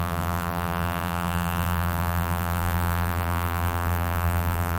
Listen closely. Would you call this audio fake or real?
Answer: fake